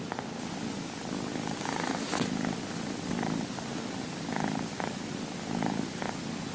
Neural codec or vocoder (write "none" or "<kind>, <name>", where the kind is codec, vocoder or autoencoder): none